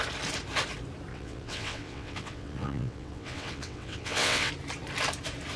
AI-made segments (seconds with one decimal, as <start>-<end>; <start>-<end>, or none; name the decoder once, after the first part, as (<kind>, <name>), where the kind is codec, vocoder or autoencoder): 1.1-4.5 (vocoder, WaveNeXt)